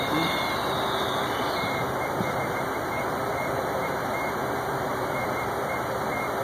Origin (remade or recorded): recorded